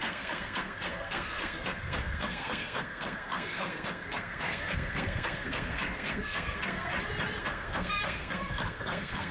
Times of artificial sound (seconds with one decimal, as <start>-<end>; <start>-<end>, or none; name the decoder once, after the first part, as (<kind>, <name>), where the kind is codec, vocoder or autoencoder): 0.0-6.9 (codec, SNAC); 7.4-9.3